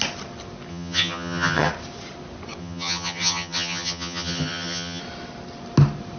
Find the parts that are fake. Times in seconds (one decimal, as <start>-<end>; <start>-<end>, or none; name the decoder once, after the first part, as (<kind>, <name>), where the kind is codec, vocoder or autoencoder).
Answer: 0.7-1.7 (vocoder, HiFi-GAN); 2.6-5.0